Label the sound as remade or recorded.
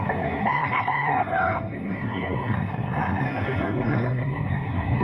remade